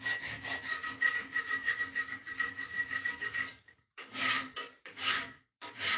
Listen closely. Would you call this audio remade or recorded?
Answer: remade